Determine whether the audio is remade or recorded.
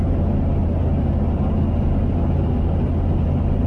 recorded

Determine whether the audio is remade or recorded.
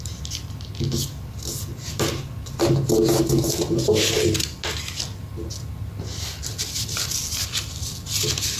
recorded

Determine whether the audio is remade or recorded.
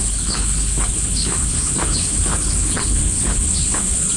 remade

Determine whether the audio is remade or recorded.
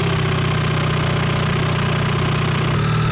recorded